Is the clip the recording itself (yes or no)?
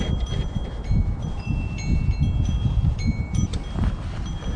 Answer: yes